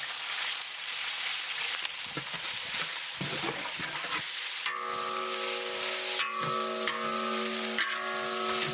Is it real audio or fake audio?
real